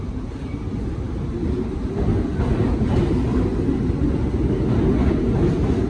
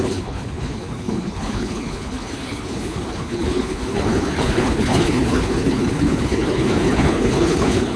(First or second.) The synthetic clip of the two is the second